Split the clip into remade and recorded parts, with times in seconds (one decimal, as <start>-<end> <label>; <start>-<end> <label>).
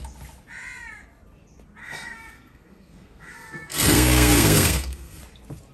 0.0-1.8 recorded; 1.8-5.2 remade; 5.2-5.7 recorded